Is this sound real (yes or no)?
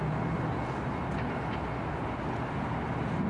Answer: yes